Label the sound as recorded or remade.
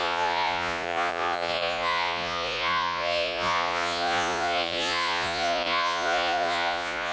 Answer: remade